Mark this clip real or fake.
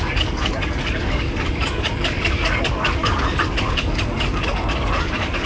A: fake